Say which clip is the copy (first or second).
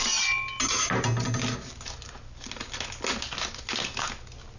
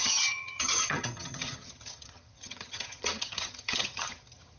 second